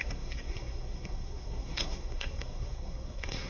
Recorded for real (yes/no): no